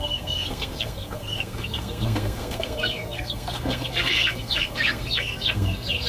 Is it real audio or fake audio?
fake